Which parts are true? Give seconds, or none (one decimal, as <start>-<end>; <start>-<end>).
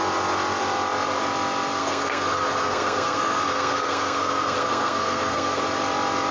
0.0-1.8; 5.6-6.3